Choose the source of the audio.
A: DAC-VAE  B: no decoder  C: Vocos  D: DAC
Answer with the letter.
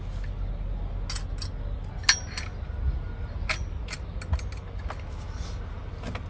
B